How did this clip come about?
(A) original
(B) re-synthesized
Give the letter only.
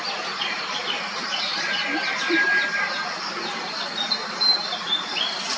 A